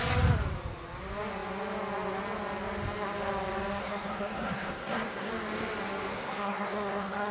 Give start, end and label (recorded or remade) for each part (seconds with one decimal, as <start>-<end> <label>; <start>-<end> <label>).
0.0-3.8 recorded; 3.8-5.3 remade; 5.3-6.1 recorded; 6.1-7.3 remade